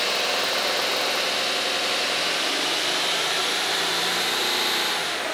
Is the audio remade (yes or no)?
no